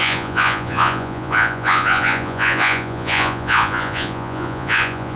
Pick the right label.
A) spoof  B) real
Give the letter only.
A